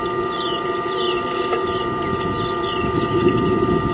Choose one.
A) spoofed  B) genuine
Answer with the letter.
B